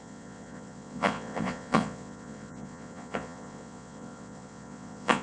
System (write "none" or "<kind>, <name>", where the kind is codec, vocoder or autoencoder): vocoder, Vocos